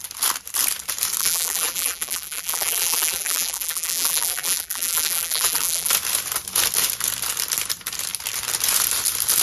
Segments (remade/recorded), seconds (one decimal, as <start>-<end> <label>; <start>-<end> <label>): 0.0-1.2 recorded; 1.2-5.9 remade; 5.9-9.4 recorded